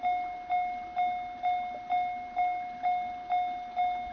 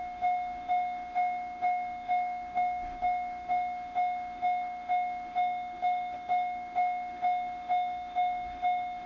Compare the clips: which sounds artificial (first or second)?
second